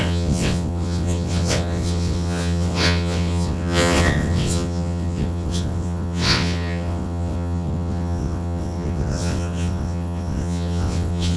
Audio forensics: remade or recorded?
remade